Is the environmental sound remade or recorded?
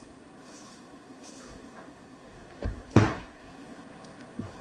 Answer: remade